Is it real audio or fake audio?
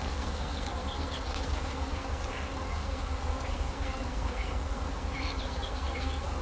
fake